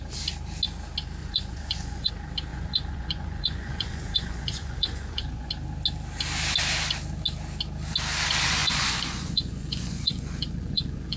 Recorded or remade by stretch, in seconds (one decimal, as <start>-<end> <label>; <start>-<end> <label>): 0.0-1.2 recorded; 1.2-2.1 remade; 2.1-2.5 recorded; 2.5-5.5 remade; 5.5-8.6 recorded; 8.6-11.2 remade